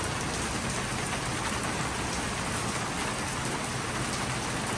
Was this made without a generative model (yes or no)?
yes